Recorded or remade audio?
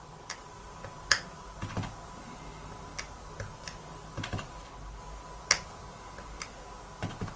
recorded